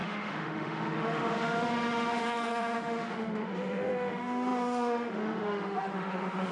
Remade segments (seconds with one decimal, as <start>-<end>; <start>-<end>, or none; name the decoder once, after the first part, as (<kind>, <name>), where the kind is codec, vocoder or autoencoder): 0.0-6.5 (autoencoder, DAC-VAE)